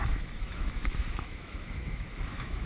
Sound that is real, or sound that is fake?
fake